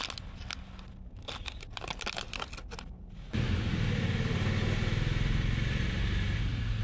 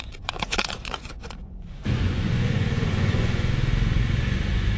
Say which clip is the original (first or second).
first